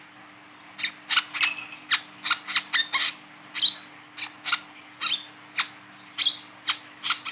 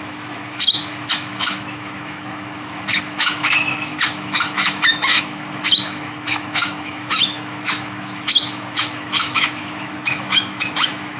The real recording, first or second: first